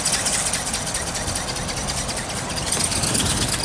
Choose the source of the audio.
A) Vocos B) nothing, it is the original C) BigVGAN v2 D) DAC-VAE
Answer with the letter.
B